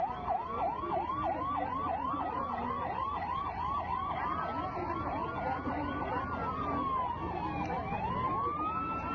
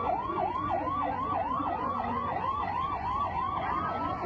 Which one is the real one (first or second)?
first